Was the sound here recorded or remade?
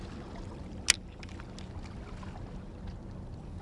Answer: recorded